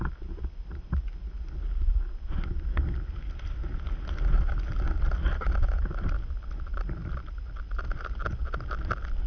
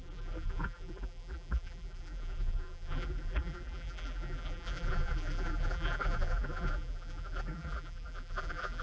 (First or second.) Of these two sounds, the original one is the first